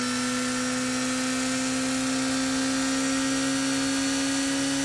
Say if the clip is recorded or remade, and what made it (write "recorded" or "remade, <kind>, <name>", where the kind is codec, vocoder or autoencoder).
recorded